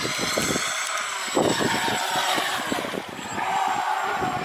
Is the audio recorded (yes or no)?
yes